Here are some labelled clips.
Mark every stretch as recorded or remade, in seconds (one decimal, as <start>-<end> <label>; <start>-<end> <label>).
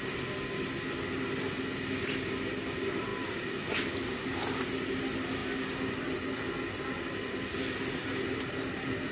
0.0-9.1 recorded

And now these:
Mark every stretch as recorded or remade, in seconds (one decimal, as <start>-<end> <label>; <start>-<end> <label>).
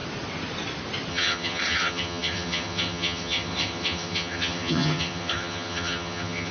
0.0-1.1 recorded; 1.1-6.5 remade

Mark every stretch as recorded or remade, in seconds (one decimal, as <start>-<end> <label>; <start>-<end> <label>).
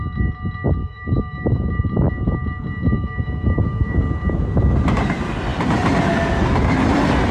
0.0-0.8 recorded; 0.8-1.7 remade; 1.7-2.9 recorded; 2.9-4.0 remade; 4.0-7.3 recorded